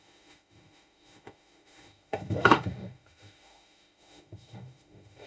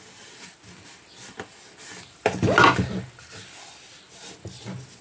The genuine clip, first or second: second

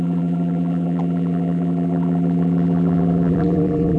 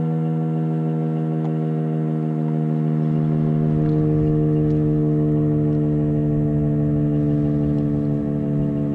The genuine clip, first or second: second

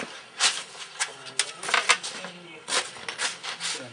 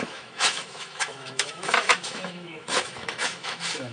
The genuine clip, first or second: first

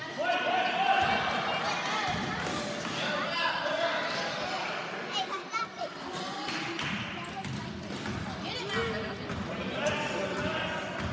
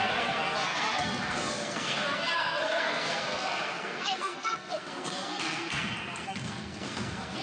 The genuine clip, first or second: first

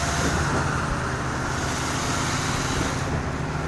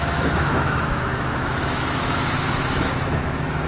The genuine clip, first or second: first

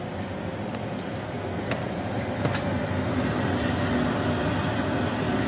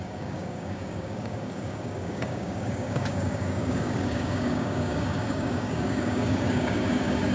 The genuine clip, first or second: first